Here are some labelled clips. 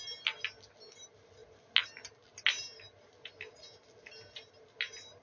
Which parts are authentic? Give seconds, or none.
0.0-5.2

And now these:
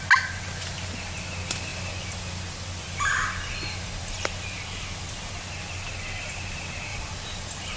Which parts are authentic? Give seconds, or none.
0.0-1.7; 5.3-6.9

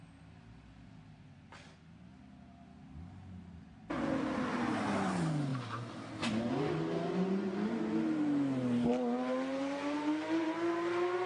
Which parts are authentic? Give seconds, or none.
0.0-11.3

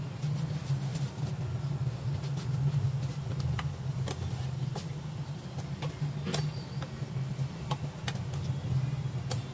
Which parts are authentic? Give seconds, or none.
0.0-9.5

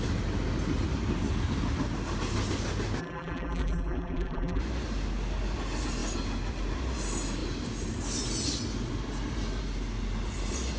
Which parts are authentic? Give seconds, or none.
0.0-3.0; 4.6-10.8

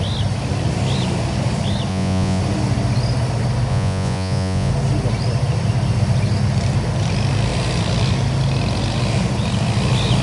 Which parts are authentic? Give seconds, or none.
0.0-1.9; 2.4-3.7; 4.7-10.2

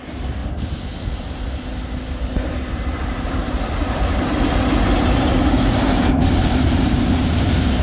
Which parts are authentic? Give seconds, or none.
0.4-2.7; 4.3-5.0

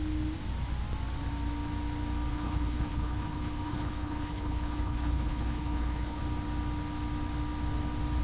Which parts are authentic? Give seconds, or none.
0.0-2.3; 6.2-8.2